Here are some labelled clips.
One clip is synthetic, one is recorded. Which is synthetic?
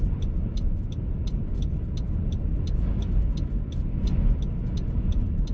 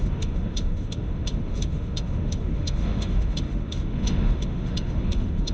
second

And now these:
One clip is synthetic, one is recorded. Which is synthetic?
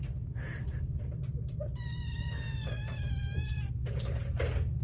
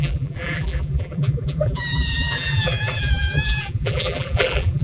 second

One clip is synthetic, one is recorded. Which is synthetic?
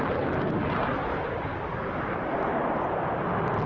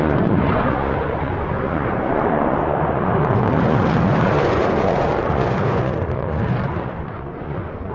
second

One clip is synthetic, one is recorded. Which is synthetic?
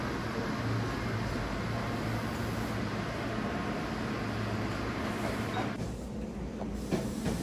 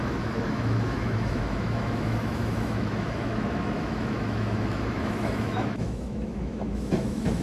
second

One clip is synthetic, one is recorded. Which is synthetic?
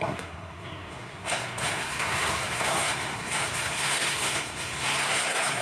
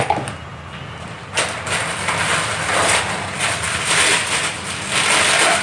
first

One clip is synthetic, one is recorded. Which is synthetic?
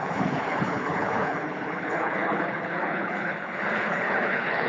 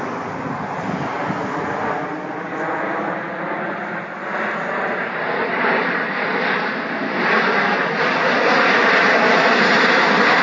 first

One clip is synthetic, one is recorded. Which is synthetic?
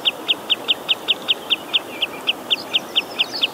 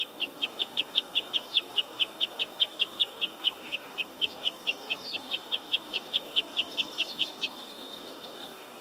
second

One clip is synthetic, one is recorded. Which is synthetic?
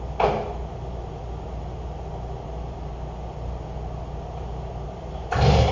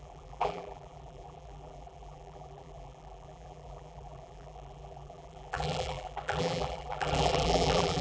second